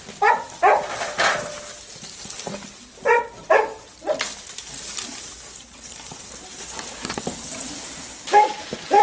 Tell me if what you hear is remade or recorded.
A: recorded